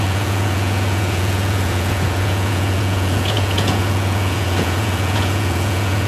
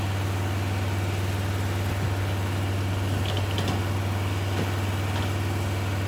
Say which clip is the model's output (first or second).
first